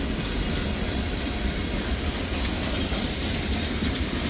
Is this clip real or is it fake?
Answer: real